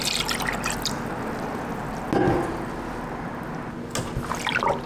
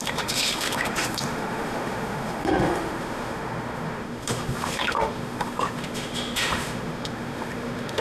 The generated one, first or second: second